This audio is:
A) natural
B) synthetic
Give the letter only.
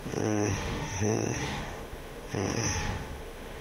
B